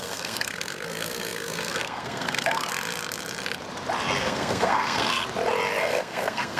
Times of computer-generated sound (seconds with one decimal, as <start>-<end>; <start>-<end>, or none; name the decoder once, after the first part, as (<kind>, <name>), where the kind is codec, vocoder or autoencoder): 0.0-2.7 (codec, SNAC); 4.2-5.2; 5.8-6.6

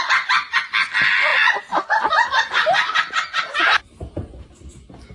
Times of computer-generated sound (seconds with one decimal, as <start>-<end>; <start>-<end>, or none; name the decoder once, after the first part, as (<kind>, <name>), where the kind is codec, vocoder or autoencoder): none

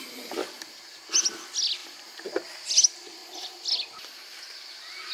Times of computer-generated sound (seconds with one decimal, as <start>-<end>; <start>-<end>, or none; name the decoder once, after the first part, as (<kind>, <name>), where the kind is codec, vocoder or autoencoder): none

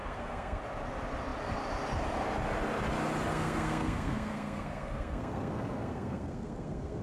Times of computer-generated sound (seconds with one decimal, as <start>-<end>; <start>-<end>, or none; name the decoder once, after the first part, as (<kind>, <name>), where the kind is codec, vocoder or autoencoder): 0.0-0.6 (codec, SNAC); 3.3-7.0

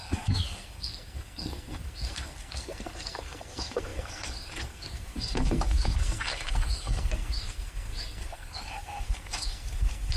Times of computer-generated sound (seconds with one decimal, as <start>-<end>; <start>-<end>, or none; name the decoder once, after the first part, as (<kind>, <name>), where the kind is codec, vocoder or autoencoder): 0.0-10.2 (codec, SNAC)

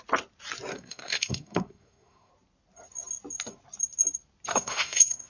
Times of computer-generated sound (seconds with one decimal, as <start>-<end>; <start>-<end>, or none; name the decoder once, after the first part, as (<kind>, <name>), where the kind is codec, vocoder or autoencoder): 0.7-2.3 (codec, SNAC); 4.5-5.3

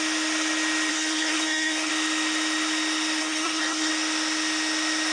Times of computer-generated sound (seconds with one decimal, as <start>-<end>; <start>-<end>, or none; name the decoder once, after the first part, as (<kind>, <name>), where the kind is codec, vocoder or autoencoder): 0.9-1.9 (codec, SNAC); 3.2-3.9